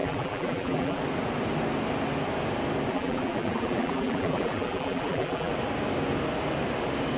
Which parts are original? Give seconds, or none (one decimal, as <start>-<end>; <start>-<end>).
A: 1.0-2.9; 5.5-7.2